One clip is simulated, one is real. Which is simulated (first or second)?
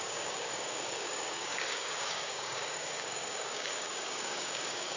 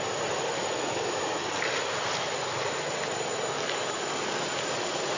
first